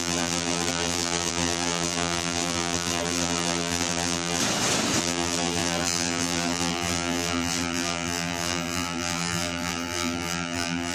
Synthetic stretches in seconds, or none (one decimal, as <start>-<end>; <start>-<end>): 0.0-4.4; 5.0-10.9